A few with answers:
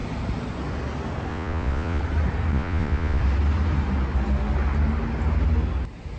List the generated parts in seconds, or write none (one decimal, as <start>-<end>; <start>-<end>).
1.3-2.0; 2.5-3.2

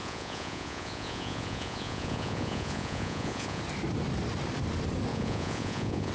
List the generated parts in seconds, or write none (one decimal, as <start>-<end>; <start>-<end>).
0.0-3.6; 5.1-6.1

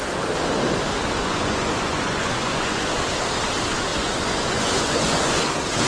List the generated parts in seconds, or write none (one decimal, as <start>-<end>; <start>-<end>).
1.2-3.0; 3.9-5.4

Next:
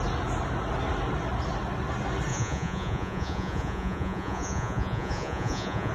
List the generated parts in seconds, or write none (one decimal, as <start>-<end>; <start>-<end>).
2.3-5.9